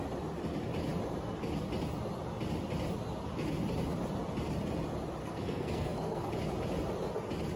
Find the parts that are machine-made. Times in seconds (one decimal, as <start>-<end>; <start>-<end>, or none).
5.2-6.3